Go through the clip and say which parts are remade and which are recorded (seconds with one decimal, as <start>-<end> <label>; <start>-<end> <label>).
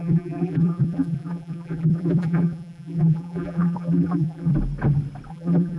0.0-4.5 remade; 4.5-5.3 recorded; 5.3-5.8 remade